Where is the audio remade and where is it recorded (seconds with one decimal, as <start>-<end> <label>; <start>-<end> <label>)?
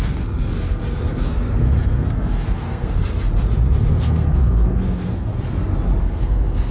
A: 0.0-3.0 remade; 3.0-3.9 recorded; 3.9-5.3 remade; 5.3-6.0 recorded; 6.0-6.7 remade